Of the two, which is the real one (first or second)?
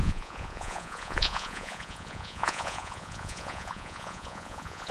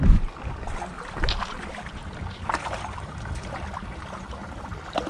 second